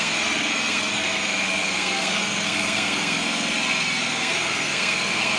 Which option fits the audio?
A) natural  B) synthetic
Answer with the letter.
B